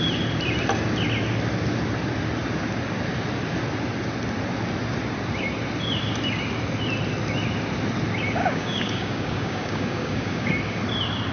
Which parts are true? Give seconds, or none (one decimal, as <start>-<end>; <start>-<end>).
0.0-8.4; 10.5-11.3